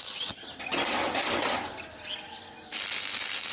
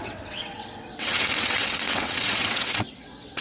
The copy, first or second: second